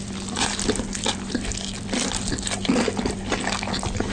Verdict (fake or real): fake